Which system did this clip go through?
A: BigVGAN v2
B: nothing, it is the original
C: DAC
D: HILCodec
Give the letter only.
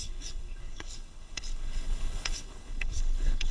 D